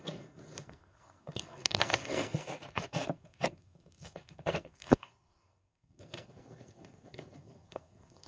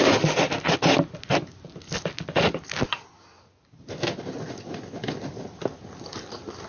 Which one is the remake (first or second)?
first